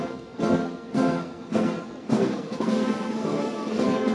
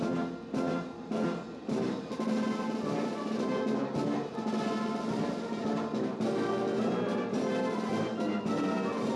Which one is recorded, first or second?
second